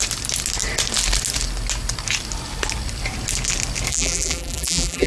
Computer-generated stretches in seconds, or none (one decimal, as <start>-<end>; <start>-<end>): 3.9-5.1